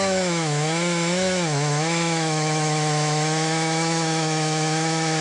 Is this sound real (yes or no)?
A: no